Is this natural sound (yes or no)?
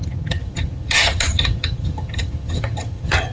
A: no